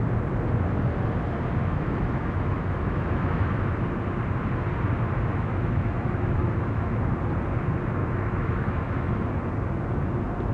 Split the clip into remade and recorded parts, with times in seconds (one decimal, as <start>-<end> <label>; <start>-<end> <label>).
0.0-1.6 recorded; 1.6-3.5 remade; 3.5-5.3 recorded; 5.3-7.0 remade; 7.0-8.0 recorded; 8.0-9.2 remade; 9.2-10.5 recorded